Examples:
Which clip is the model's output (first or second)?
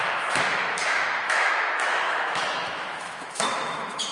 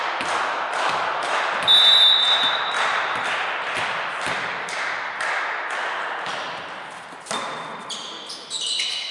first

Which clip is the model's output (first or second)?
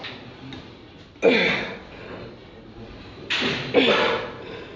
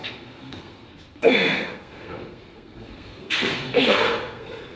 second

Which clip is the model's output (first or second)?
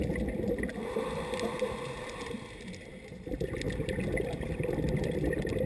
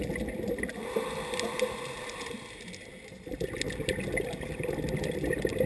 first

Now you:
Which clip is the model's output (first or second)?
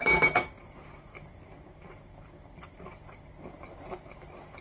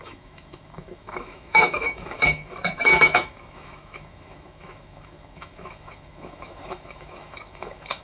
second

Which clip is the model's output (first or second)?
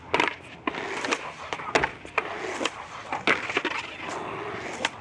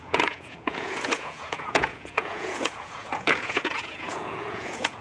second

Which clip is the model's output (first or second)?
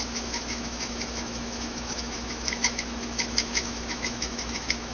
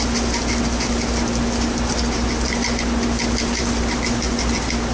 first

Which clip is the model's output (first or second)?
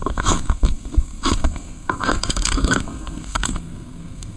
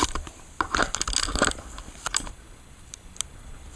first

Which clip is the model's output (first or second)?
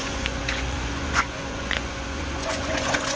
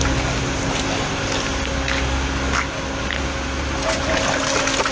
first